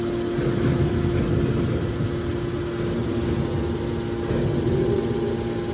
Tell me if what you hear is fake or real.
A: real